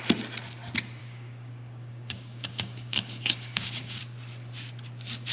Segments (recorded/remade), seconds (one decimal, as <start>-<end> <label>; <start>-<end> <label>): 0.0-1.0 recorded; 1.0-4.0 remade; 4.0-5.3 recorded